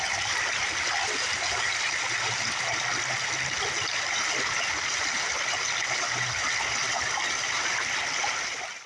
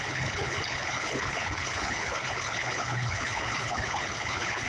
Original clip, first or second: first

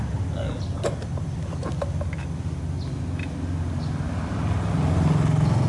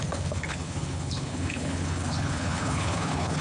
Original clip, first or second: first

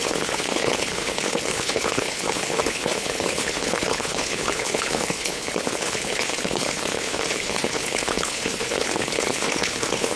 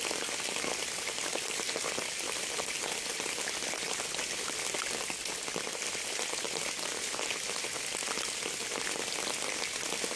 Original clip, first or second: second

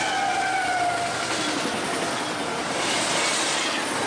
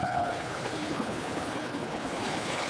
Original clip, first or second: first